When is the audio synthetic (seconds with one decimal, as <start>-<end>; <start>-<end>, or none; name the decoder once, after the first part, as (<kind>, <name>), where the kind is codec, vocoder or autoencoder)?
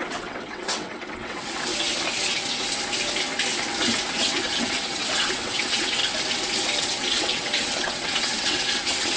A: 0.0-1.7 (vocoder, WaveNeXt); 4.1-6.0; 6.8-9.2